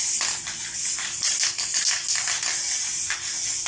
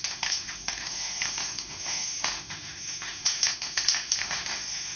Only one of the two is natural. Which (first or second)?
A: first